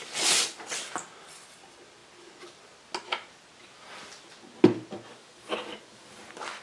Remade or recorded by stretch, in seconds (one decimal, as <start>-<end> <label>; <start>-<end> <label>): 0.0-5.1 recorded; 5.1-6.1 remade; 6.1-6.6 recorded